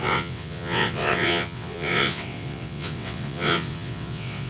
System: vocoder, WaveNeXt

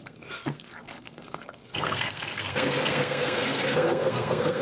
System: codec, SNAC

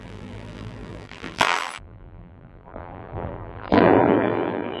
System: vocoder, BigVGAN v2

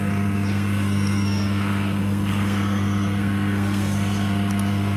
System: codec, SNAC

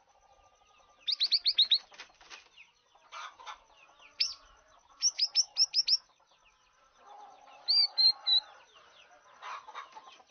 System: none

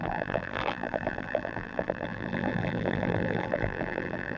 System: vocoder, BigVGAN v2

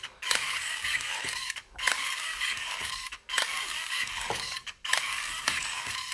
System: codec, DAC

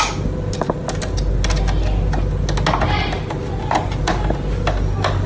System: none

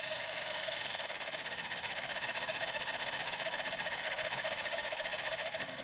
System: autoencoder, DAC-VAE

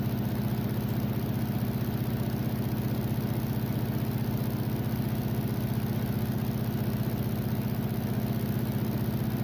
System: none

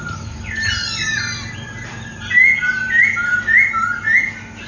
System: none